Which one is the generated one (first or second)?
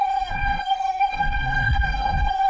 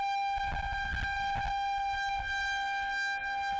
first